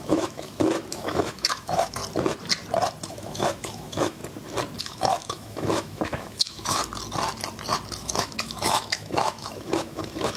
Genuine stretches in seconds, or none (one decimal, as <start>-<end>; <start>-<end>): 2.0-3.1; 4.2-4.8; 6.8-8.0

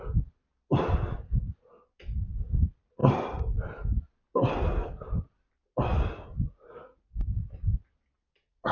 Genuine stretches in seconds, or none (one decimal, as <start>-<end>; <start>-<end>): 0.0-8.7

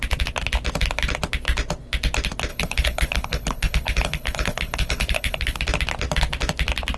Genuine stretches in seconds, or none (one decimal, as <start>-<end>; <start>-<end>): 0.0-2.5; 5.6-7.0

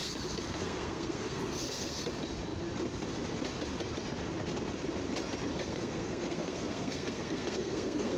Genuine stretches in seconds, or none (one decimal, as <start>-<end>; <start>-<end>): 2.0-5.5

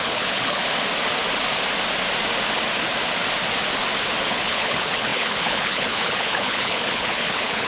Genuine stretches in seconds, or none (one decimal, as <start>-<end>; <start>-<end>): 0.6-4.3

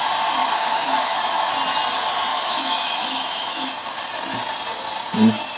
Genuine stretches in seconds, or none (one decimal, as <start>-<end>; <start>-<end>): 0.0-0.4; 1.5-2.3; 3.7-5.6

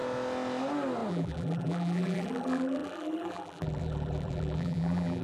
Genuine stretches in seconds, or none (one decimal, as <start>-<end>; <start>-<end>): 0.0-1.1